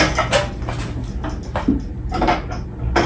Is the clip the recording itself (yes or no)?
yes